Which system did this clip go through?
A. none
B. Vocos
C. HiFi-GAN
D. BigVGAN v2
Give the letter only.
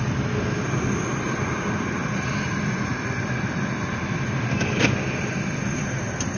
A